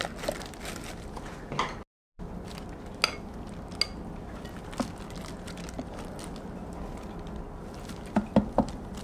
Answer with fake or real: real